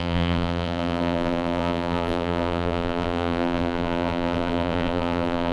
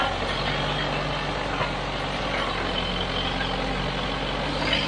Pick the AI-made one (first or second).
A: first